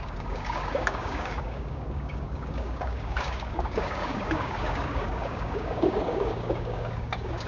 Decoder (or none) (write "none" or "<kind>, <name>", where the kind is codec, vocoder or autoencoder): codec, DAC